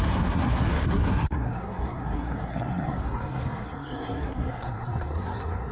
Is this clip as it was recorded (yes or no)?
no